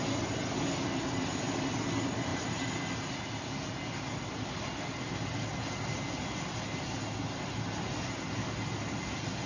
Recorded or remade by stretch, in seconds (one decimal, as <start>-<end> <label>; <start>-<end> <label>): 0.0-9.5 recorded